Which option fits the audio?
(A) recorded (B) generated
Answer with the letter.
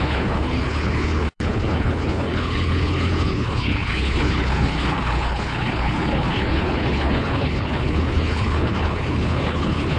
B